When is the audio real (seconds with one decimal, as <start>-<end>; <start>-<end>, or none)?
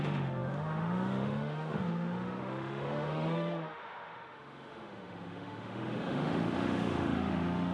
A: none